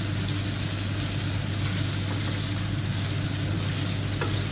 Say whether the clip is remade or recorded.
recorded